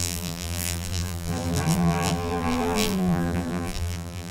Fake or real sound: fake